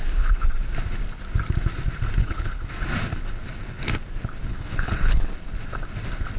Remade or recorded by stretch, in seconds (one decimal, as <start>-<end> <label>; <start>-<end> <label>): 0.0-0.6 remade; 0.6-2.2 recorded; 2.2-2.7 remade; 2.7-4.5 recorded; 4.5-5.3 remade; 5.3-6.4 recorded